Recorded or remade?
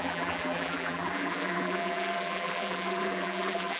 remade